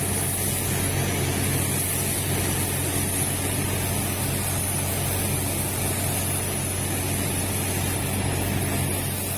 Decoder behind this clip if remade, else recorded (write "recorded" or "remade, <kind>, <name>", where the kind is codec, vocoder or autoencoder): recorded